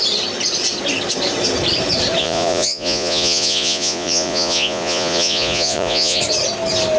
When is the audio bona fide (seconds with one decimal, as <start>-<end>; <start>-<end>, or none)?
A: 0.0-2.2; 6.2-7.0